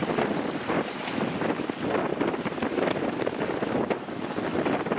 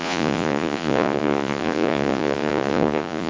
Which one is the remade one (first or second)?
second